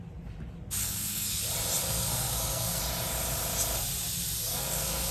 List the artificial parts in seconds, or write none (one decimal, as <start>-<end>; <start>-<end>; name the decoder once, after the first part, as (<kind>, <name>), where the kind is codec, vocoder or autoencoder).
0.8-1.4 (codec, SNAC); 1.8-2.8; 4.5-5.1